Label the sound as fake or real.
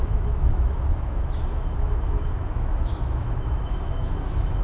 fake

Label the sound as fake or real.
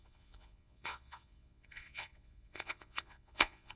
fake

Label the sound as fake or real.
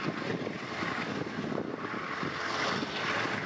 real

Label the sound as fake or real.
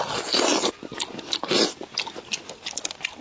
real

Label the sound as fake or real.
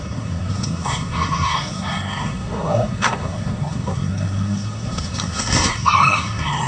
fake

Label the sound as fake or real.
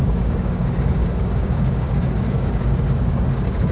fake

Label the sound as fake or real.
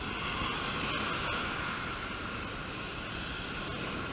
real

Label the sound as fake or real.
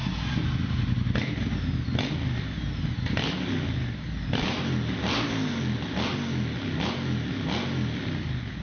real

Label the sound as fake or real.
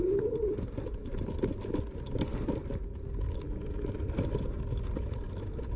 real